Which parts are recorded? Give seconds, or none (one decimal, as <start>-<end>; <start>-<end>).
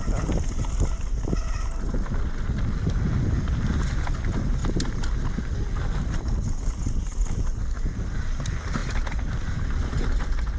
0.0-10.6